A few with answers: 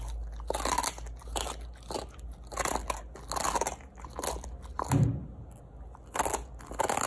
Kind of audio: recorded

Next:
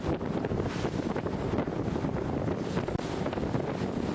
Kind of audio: recorded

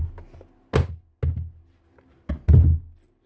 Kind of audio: recorded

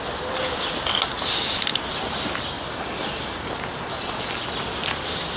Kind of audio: recorded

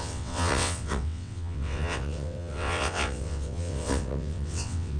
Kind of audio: remade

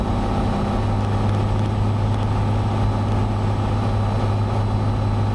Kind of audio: recorded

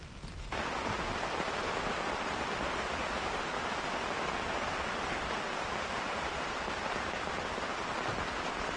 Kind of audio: recorded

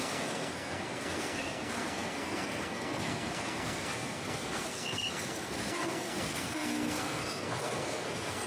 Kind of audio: remade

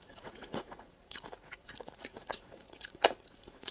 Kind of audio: remade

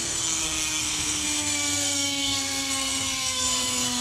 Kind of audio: remade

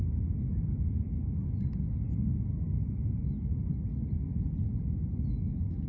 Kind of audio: recorded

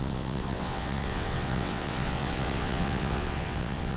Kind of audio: remade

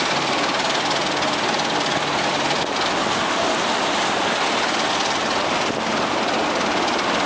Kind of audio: recorded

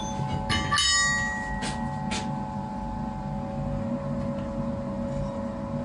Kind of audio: recorded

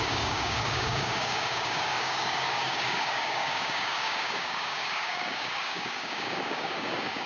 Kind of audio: remade